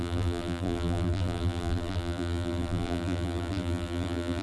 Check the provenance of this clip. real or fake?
fake